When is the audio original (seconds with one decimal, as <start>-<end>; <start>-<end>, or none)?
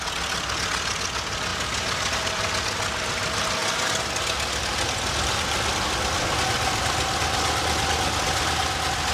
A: 0.0-9.1